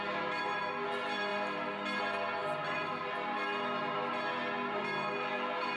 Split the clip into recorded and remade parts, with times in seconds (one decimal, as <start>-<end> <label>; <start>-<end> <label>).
0.0-5.8 recorded